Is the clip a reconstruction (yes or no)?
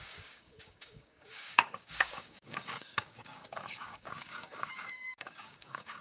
yes